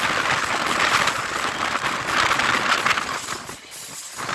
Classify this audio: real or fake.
real